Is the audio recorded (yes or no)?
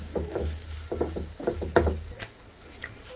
yes